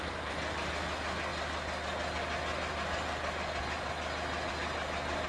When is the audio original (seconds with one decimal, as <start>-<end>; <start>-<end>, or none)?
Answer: 0.0-5.3